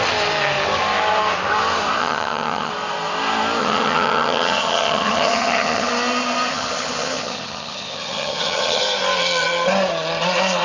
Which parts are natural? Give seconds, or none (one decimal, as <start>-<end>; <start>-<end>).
0.0-2.0; 2.7-3.6; 5.9-6.5; 8.8-10.6

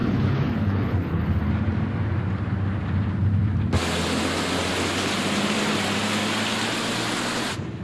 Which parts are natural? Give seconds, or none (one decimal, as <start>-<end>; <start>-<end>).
1.5-7.8